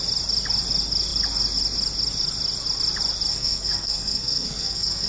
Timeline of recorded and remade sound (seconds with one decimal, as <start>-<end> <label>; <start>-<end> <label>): 0.0-3.3 recorded; 3.3-5.1 remade